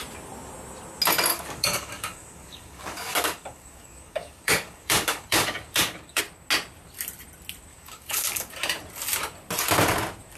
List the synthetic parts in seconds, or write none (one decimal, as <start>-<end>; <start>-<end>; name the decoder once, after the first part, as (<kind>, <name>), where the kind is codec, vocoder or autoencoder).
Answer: 1.3-6.2 (codec, DAC); 7.7-8.5